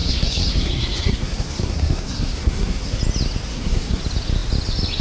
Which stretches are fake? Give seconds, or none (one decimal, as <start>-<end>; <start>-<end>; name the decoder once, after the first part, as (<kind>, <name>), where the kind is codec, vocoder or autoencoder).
0.0-3.0 (codec, SNAC); 3.5-4.0